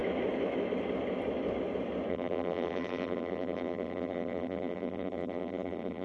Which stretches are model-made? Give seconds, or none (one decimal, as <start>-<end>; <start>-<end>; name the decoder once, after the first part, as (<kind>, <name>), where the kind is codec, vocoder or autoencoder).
2.1-6.0 (vocoder, BigVGAN v2)